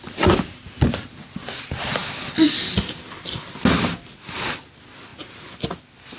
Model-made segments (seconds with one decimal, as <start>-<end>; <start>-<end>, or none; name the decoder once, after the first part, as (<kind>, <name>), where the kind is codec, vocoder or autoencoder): none